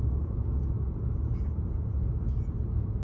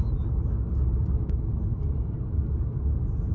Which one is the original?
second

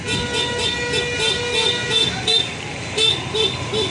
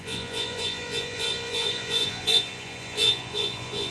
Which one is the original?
first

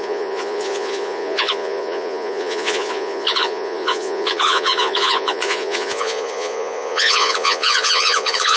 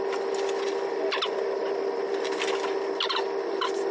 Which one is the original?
second